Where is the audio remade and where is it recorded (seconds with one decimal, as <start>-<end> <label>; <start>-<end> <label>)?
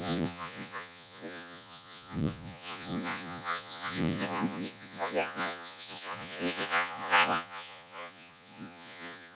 0.0-9.3 remade